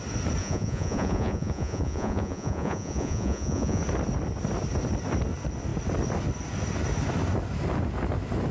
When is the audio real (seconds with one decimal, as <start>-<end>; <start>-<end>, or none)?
0.0-0.4; 3.8-8.5